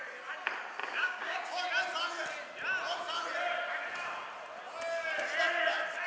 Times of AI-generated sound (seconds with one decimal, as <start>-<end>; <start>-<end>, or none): 0.8-1.7